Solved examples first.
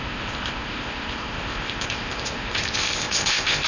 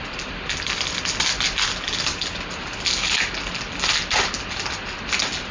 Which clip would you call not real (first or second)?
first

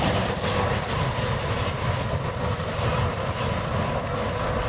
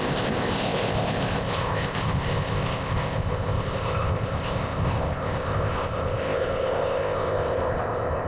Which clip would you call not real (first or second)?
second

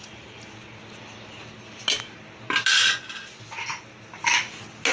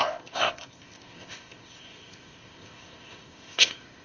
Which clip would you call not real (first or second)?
second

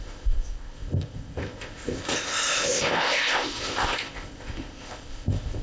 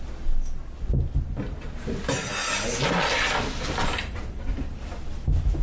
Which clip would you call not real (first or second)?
first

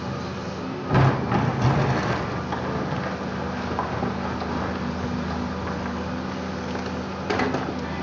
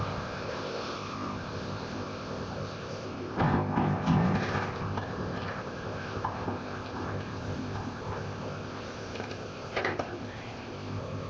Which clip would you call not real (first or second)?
second